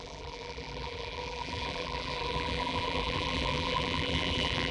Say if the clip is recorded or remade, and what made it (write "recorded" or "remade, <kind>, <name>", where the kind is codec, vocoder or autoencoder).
remade, vocoder, BigVGAN v2